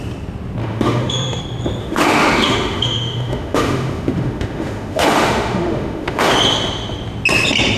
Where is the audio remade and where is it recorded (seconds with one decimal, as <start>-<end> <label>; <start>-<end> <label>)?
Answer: 0.0-0.6 recorded; 0.6-1.4 remade; 1.4-1.8 recorded; 1.8-6.3 remade; 6.3-7.8 recorded